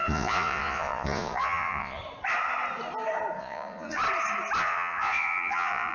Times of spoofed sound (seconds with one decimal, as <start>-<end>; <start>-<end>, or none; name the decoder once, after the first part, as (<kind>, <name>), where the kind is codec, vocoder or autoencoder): 0.0-2.0 (vocoder, Vocos); 3.4-4.0; 4.6-5.9